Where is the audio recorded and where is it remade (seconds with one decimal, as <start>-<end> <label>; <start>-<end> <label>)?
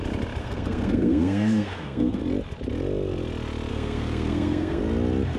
0.0-0.4 recorded; 0.4-2.2 remade; 2.2-3.7 recorded; 3.7-4.8 remade; 4.8-5.4 recorded